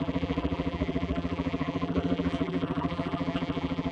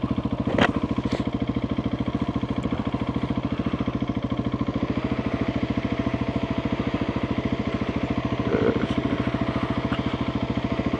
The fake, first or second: first